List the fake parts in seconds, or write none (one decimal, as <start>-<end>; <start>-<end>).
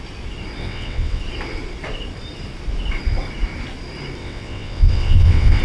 0.6-1.2; 4.2-5.6